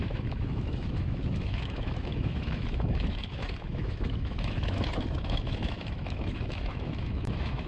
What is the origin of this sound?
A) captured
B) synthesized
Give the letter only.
B